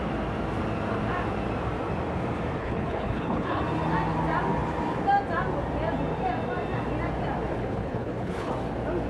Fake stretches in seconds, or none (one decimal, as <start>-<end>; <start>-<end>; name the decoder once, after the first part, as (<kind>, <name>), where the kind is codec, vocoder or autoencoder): 2.6-3.6 (codec, HILCodec); 7.5-8.5